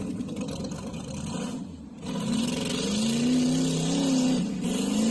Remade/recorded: recorded